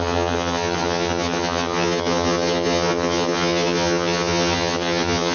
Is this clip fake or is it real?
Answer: fake